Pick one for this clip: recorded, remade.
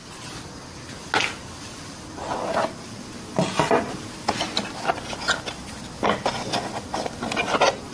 recorded